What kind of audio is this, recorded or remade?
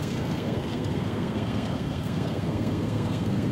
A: remade